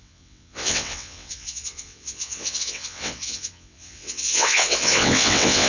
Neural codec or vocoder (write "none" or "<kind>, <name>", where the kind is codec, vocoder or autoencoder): vocoder, WaveNeXt